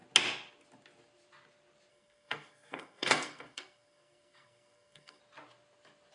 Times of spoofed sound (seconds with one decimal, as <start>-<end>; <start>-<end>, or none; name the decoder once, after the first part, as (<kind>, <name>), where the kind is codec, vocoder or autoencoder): 1.9-5.2 (codec, SNAC)